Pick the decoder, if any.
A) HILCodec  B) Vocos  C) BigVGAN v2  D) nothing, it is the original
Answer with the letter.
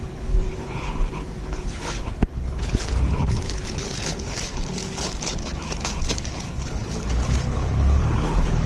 A